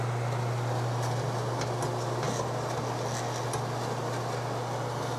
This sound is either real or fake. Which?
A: real